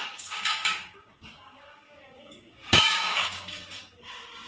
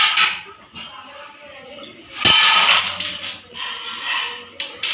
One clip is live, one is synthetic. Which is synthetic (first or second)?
first